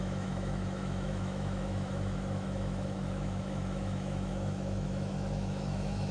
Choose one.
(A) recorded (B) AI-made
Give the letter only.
B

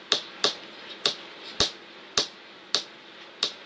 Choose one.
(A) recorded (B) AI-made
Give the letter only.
A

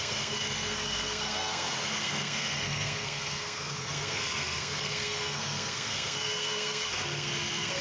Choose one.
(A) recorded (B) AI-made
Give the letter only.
B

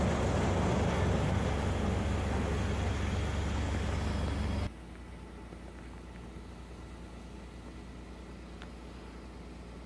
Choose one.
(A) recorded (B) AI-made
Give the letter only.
A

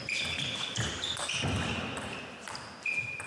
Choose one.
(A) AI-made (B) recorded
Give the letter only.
B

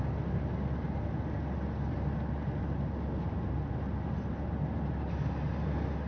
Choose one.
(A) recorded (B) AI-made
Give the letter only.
A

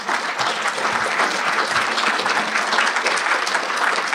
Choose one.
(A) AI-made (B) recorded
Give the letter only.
B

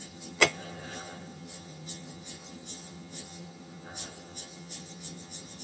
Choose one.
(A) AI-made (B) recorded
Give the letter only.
A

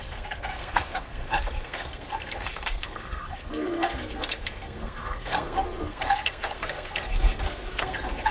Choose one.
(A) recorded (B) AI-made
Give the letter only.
B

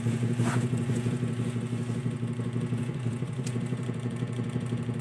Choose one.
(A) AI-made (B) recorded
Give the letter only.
A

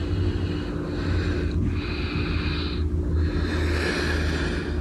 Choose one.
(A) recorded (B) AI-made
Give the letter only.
A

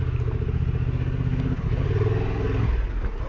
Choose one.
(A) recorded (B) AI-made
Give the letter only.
A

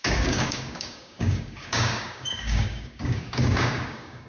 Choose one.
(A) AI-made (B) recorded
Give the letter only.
A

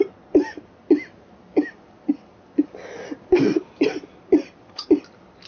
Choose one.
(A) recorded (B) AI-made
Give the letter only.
A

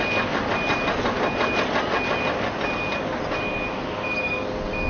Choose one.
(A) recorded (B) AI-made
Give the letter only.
A